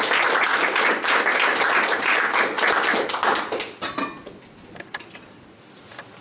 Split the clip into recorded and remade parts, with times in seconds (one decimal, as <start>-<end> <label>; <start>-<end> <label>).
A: 0.0-6.2 recorded